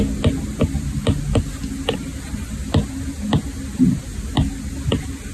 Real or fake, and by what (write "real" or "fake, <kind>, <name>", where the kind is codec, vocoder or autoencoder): real